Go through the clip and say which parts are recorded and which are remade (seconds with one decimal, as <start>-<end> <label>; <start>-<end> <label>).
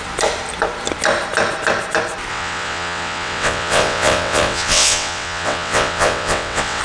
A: 0.0-2.3 recorded; 2.3-6.8 remade